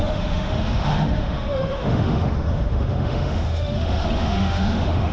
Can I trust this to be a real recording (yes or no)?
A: no